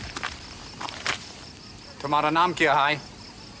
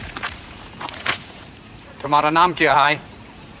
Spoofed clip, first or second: second